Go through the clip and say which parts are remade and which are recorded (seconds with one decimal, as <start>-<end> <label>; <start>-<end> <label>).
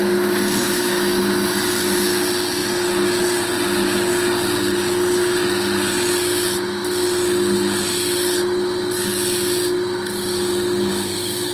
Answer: 0.0-0.6 recorded; 0.6-1.2 remade; 1.2-11.5 recorded